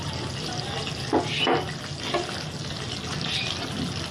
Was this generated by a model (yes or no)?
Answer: no